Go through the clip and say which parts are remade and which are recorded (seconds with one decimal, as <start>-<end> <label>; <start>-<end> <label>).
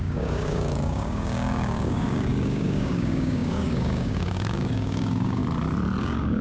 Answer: 0.0-5.4 remade; 5.4-6.0 recorded; 6.0-6.4 remade